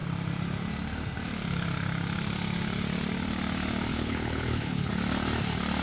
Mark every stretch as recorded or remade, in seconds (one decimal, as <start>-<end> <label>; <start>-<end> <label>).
0.0-3.9 recorded; 3.9-4.9 remade; 4.9-5.8 recorded